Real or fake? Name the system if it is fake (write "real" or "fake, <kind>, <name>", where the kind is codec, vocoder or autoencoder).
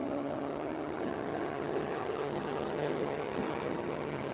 fake, vocoder, HiFi-GAN